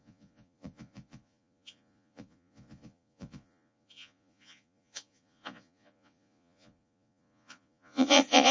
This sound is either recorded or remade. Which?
remade